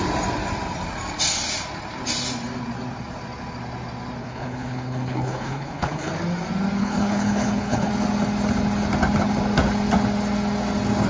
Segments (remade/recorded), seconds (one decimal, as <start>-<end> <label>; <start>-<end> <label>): 0.0-4.2 recorded; 4.2-6.1 remade; 6.1-6.8 recorded; 6.8-7.9 remade; 7.9-11.1 recorded

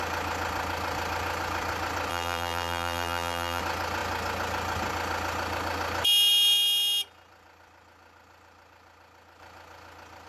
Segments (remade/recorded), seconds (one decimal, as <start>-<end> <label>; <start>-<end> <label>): 0.0-2.1 recorded; 2.1-3.6 remade; 3.6-10.3 recorded